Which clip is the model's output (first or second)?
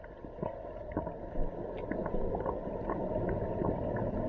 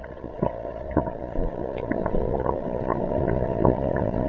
second